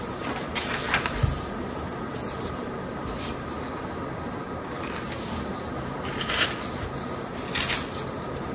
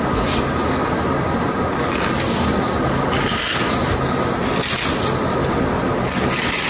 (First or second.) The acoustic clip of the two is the second